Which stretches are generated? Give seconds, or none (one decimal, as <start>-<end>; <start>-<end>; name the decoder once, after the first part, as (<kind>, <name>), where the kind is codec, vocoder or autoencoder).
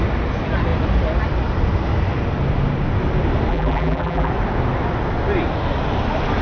3.5-4.3 (vocoder, BigVGAN v2)